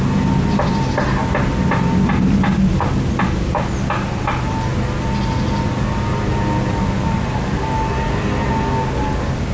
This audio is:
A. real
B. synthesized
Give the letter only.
A